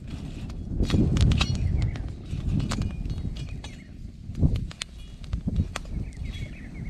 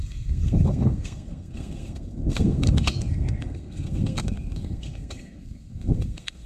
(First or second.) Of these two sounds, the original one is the first